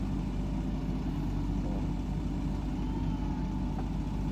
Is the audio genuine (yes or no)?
yes